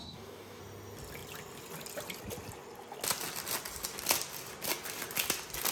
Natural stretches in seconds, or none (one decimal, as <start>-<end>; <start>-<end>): 0.6-5.7